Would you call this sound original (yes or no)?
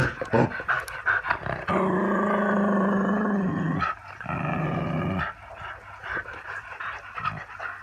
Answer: yes